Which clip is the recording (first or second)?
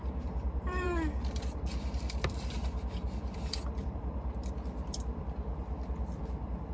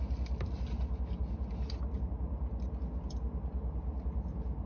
second